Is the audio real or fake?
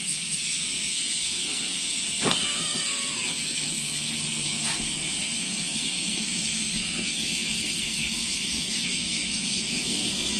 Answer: fake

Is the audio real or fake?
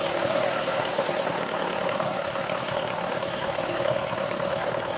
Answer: fake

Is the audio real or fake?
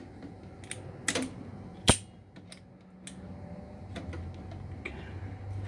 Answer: real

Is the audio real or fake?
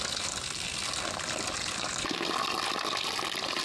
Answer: real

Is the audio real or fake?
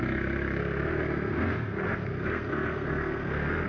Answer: fake